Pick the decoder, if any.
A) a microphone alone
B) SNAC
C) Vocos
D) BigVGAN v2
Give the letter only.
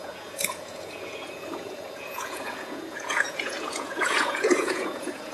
C